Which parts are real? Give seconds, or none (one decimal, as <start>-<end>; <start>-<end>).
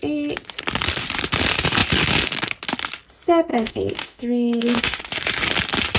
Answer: 0.0-3.5; 5.0-6.0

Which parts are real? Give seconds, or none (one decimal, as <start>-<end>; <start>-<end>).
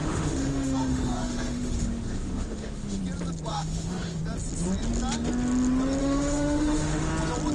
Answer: 3.0-3.5; 4.2-6.0; 7.1-7.5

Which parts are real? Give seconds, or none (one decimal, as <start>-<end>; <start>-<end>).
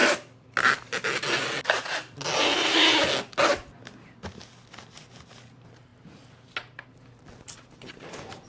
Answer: 0.0-8.5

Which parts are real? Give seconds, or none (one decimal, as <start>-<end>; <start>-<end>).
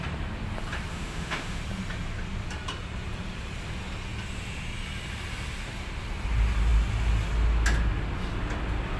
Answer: 0.0-0.9; 1.6-9.0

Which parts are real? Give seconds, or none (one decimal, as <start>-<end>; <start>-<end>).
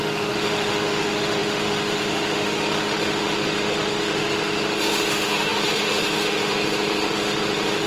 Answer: none